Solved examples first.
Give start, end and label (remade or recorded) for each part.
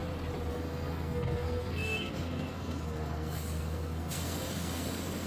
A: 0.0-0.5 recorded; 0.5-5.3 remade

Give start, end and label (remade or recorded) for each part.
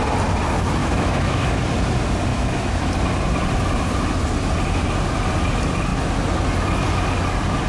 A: 0.0-0.8 recorded; 0.8-1.6 remade; 1.6-2.3 recorded; 2.3-2.9 remade; 2.9-7.7 recorded